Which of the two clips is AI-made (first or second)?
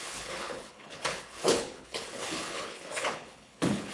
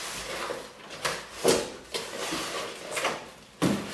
first